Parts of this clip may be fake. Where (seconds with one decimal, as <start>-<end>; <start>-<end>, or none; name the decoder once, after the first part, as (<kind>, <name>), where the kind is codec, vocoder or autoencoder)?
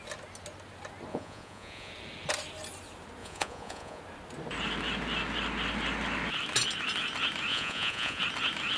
1.1-1.9 (vocoder, Vocos); 3.2-4.0; 7.5-8.2